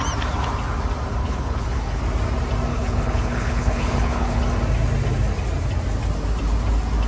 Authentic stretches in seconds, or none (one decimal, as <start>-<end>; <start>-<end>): 0.0-1.2; 2.0-2.7; 4.4-7.1

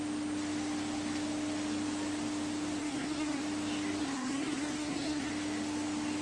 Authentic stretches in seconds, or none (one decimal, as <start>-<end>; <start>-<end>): 0.0-2.8; 3.4-4.0; 5.3-6.2

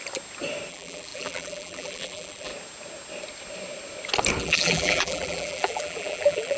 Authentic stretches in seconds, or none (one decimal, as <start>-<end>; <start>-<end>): 0.0-0.7; 2.5-4.4

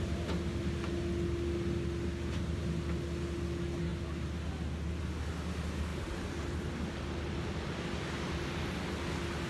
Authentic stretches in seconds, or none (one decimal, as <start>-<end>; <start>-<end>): 0.0-9.5

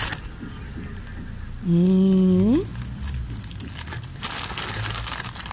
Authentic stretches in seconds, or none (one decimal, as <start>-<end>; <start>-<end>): 0.0-5.5